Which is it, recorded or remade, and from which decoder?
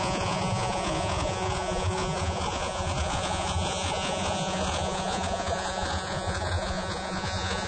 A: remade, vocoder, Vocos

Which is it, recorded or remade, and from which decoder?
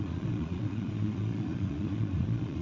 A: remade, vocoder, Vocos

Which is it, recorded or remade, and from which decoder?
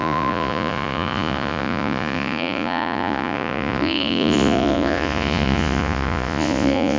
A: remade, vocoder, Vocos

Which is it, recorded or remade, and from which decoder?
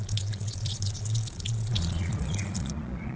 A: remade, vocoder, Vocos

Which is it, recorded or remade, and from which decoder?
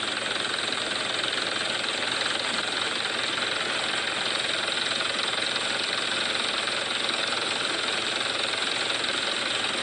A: recorded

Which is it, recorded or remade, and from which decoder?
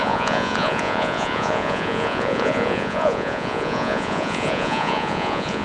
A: remade, vocoder, Vocos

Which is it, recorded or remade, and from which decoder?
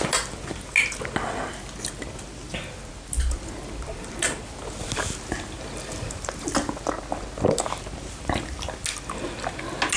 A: recorded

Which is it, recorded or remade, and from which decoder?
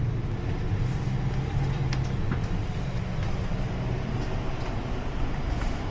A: recorded